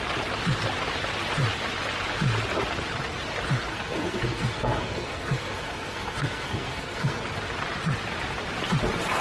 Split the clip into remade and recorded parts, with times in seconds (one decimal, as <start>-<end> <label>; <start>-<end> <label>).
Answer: 0.0-3.7 recorded; 3.7-7.2 remade; 7.2-9.2 recorded